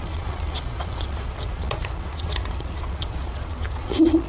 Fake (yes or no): yes